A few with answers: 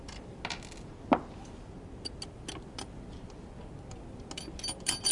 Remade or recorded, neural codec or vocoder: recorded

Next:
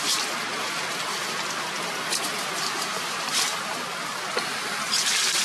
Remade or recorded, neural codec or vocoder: recorded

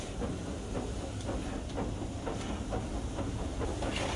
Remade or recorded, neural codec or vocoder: recorded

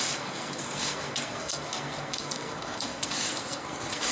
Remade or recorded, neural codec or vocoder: remade, codec, SNAC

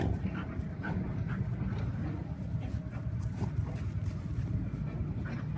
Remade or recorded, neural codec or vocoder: recorded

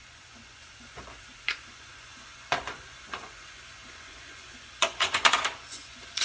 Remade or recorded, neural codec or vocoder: remade, vocoder, Vocos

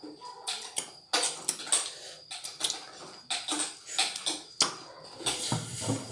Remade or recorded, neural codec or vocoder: recorded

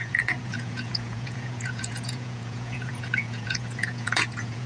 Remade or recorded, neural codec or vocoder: remade, vocoder, Vocos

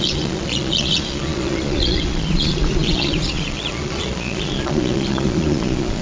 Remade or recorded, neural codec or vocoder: remade, vocoder, Vocos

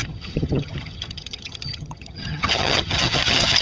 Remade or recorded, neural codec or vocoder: remade, vocoder, HiFi-GAN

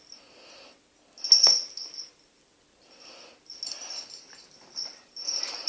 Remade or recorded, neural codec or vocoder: recorded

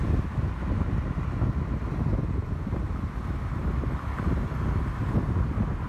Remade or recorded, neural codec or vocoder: recorded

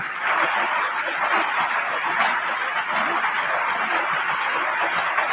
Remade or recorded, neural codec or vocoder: recorded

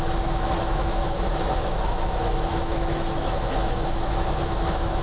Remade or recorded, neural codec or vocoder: remade, autoencoder, DAC-VAE